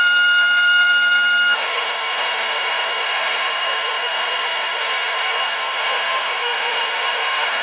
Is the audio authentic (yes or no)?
no